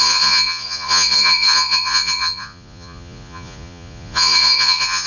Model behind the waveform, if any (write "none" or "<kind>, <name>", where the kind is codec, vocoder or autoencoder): vocoder, Vocos